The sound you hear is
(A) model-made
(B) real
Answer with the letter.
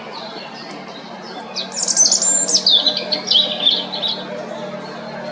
B